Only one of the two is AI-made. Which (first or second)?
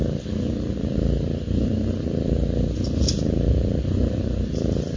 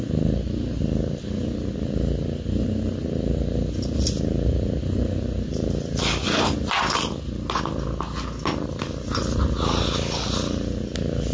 first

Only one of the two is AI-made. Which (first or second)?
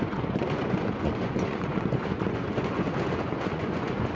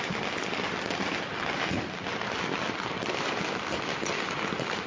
first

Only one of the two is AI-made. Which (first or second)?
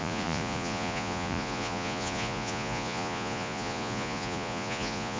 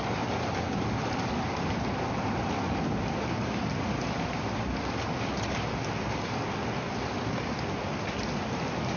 first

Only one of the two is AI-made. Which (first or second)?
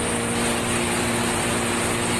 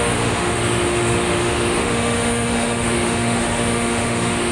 second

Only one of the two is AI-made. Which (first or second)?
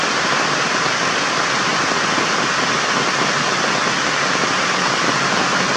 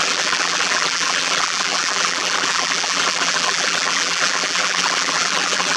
second